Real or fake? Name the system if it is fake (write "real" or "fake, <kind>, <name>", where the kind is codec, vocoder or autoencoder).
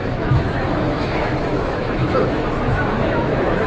fake, autoencoder, DAC-VAE